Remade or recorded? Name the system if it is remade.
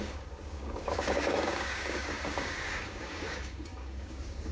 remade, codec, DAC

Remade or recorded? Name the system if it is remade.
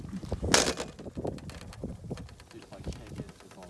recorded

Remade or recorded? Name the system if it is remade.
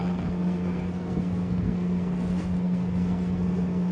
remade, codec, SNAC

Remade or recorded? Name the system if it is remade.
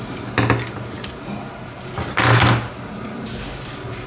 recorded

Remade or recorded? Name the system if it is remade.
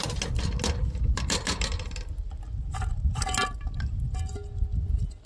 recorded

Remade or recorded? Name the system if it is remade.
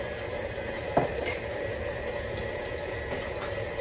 recorded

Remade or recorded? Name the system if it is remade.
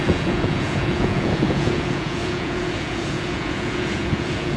remade, vocoder, Vocos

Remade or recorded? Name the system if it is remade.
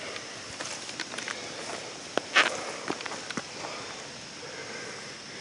recorded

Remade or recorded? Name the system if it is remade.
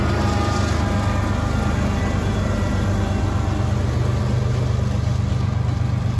recorded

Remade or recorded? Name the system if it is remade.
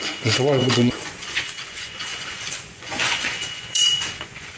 remade, vocoder, Vocos